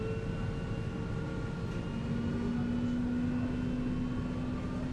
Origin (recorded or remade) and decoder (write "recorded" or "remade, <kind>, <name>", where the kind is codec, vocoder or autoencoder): recorded